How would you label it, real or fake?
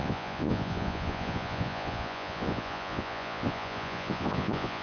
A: fake